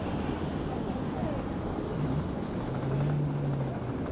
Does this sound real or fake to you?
real